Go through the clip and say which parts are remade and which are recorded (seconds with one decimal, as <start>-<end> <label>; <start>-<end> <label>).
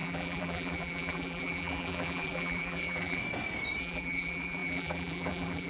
0.0-3.2 remade; 3.2-3.8 recorded; 3.8-5.7 remade